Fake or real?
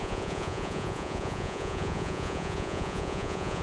fake